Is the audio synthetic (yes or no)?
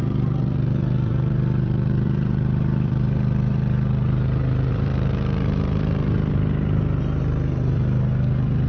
yes